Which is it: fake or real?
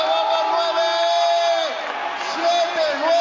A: real